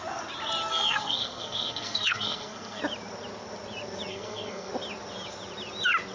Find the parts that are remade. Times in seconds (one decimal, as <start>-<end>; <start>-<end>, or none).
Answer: 0.7-2.8; 4.1-4.7